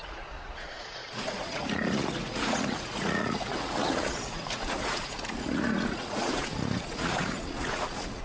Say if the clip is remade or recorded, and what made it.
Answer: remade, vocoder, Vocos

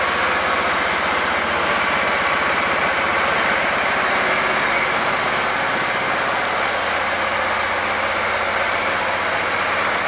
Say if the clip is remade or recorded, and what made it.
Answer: recorded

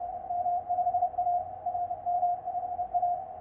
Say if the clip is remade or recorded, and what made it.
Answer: recorded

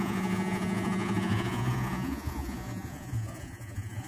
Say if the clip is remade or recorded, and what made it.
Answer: remade, vocoder, Vocos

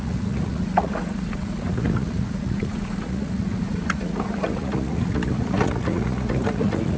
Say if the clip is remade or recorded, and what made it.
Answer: remade, vocoder, Vocos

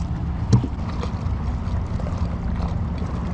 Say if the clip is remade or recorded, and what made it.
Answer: recorded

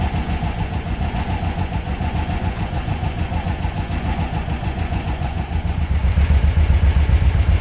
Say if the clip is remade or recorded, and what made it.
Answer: remade, vocoder, Vocos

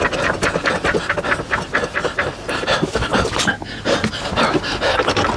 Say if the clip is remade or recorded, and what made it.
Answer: recorded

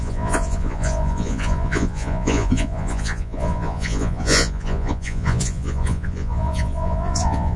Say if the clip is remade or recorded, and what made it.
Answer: remade, vocoder, Vocos